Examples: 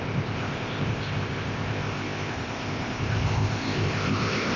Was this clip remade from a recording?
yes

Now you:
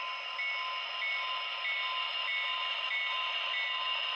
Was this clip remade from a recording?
no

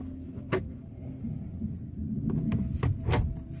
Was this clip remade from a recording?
no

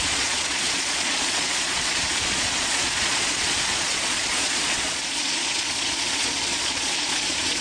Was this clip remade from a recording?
yes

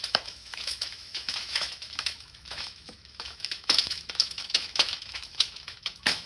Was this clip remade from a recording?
yes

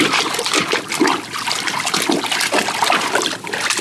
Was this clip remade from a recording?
no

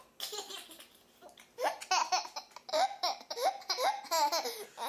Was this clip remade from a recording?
no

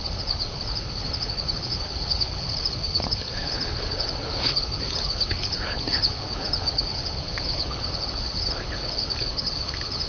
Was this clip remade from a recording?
yes